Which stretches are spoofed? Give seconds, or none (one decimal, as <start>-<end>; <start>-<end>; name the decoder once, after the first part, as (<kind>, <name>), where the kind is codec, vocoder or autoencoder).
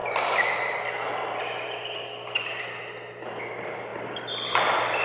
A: none